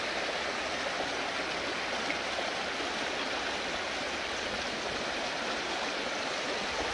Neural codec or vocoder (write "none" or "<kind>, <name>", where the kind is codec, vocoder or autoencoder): none